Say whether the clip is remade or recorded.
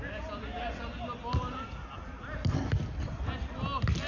recorded